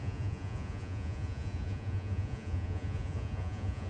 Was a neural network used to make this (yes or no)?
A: yes